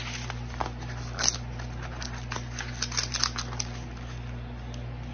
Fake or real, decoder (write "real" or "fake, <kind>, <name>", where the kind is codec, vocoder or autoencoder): real